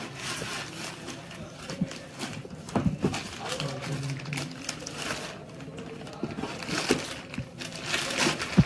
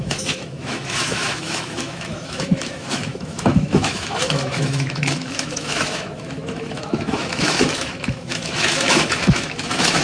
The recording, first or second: first